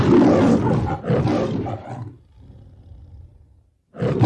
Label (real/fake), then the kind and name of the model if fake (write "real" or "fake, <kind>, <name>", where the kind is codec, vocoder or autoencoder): real